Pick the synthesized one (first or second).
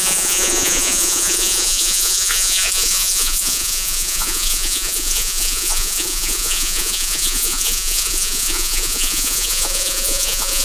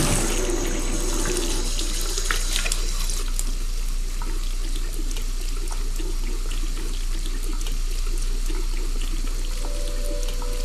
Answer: first